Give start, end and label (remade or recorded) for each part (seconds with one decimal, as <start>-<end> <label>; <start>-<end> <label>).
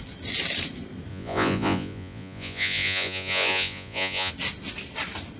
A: 0.0-1.1 recorded; 1.1-4.3 remade; 4.3-5.4 recorded